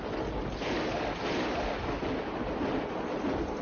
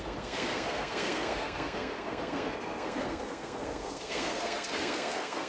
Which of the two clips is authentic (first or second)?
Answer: first